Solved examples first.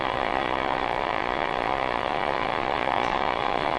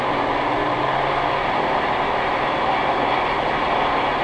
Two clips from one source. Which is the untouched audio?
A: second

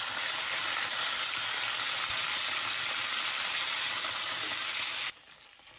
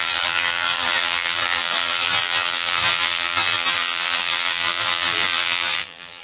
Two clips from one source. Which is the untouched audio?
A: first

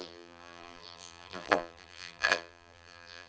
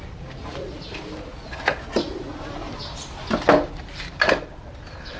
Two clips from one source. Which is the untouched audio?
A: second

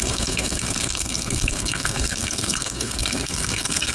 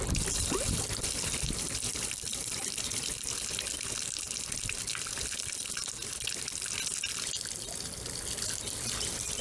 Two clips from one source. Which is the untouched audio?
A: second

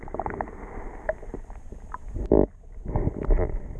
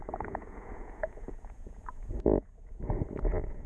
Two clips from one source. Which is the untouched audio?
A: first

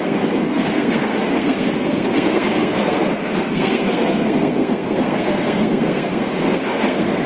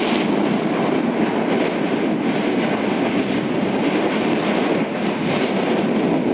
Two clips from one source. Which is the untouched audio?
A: second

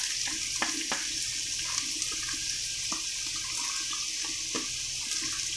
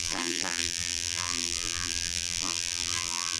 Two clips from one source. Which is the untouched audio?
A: first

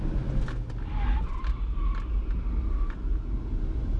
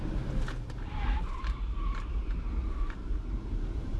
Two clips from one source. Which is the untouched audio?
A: first